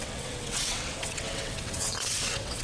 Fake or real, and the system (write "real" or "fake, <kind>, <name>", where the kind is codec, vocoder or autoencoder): fake, vocoder, WaveNeXt